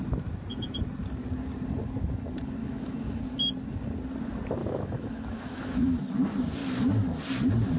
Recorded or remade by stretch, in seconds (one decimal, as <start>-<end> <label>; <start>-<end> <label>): 0.0-2.6 recorded; 2.6-3.2 remade; 3.2-4.6 recorded; 4.6-6.0 remade; 6.0-7.8 recorded